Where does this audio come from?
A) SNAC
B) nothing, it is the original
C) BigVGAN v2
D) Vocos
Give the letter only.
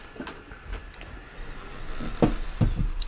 B